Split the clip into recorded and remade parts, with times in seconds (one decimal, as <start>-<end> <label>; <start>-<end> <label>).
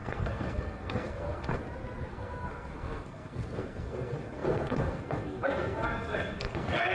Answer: 0.0-1.6 remade; 1.6-2.1 recorded; 2.1-6.9 remade